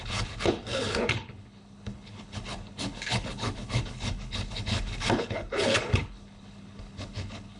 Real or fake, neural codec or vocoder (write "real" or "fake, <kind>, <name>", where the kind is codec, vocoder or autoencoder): fake, codec, HILCodec